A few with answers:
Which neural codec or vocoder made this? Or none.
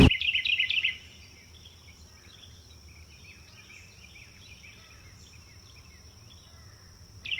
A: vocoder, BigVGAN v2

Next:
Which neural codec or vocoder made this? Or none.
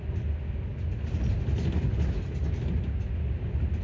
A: none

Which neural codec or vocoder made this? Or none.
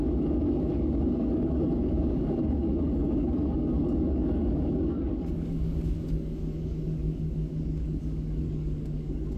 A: codec, DAC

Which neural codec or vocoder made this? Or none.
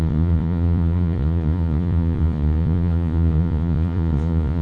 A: vocoder, Vocos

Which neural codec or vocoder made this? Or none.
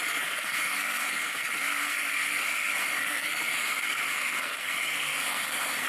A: codec, SNAC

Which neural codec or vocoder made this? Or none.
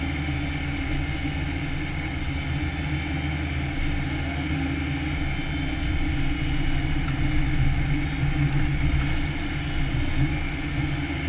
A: none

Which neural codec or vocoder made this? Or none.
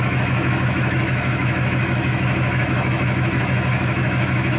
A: autoencoder, DAC-VAE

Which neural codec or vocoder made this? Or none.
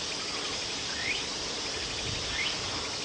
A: none